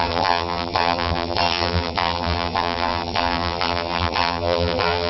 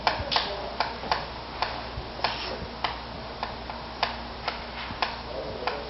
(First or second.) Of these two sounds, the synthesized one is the first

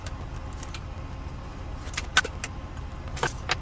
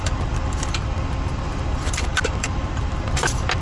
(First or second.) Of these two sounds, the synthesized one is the second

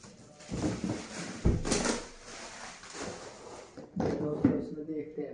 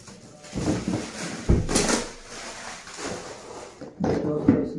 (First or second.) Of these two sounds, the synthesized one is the first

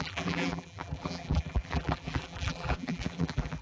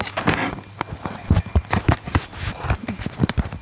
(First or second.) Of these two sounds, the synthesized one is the first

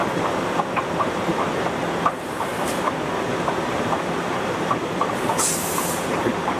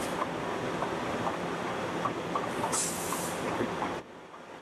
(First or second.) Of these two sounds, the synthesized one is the first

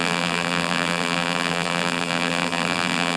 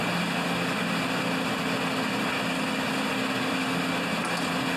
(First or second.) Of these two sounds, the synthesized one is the first